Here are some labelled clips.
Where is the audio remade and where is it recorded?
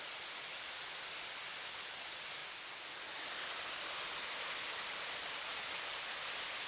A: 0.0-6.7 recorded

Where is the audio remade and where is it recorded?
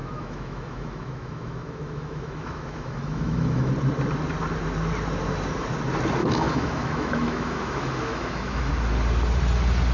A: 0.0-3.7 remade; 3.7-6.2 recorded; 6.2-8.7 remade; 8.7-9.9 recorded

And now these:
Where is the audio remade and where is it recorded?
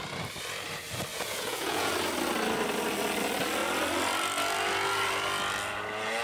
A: 0.0-1.1 recorded; 1.1-1.9 remade; 1.9-6.2 recorded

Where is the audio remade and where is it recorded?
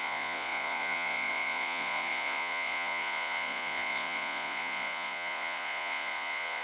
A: 0.0-6.6 remade